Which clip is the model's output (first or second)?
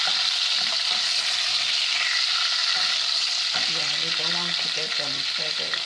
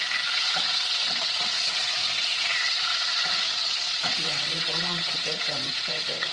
second